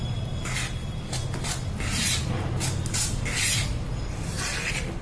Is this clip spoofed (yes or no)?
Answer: no